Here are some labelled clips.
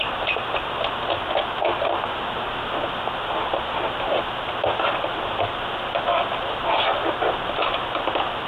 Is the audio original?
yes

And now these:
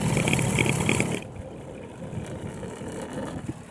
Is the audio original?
yes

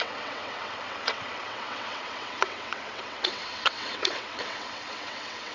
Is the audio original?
no